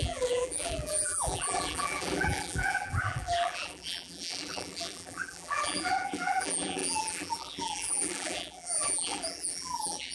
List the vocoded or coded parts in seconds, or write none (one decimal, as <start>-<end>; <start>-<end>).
0.0-10.1